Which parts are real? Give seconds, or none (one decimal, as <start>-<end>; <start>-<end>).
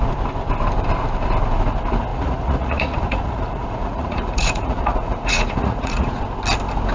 0.0-2.1; 6.2-6.9